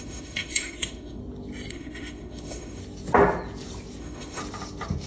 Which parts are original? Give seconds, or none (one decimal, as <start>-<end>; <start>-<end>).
1.2-1.7; 2.8-4.0; 4.4-5.1